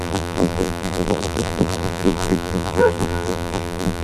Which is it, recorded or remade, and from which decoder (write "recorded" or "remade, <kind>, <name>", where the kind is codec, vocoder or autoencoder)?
remade, vocoder, BigVGAN v2